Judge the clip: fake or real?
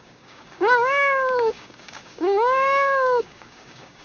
fake